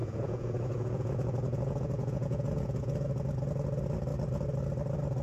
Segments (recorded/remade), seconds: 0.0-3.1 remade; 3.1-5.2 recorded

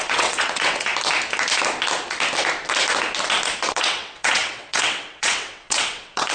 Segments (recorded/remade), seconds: 0.0-0.9 remade; 0.9-3.7 recorded; 3.7-6.3 remade

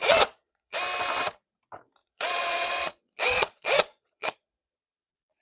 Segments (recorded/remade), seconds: 0.0-0.8 remade; 0.8-2.0 recorded; 2.0-5.4 remade

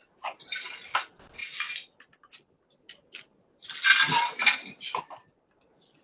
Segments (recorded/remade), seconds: 0.0-6.0 recorded